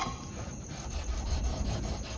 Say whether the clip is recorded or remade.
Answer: recorded